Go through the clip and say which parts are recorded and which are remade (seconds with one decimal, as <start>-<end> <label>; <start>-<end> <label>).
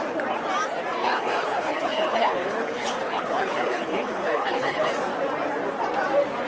0.0-1.0 recorded; 1.0-4.9 remade; 4.9-6.5 recorded